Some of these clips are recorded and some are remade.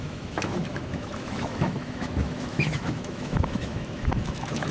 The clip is remade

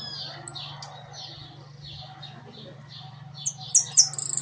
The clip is recorded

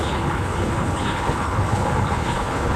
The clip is remade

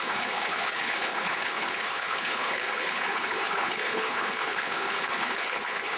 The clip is remade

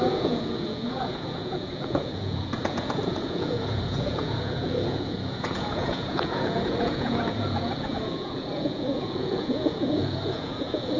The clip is remade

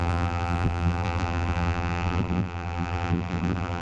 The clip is remade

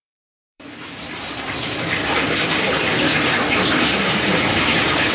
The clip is remade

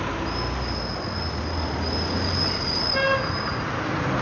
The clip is recorded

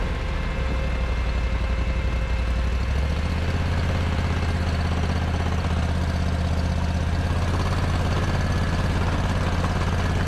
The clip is recorded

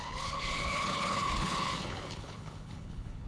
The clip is remade